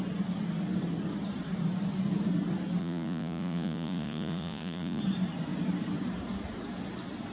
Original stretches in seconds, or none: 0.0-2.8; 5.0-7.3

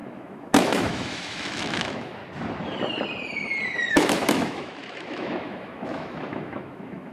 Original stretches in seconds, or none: 2.2-3.9